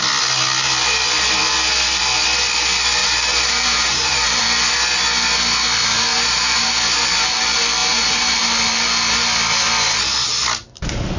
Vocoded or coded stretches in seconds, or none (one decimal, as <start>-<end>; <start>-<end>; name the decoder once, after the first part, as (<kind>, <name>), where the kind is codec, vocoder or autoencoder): 3.0-4.4 (vocoder, BigVGAN v2); 6.1-6.7; 7.8-8.4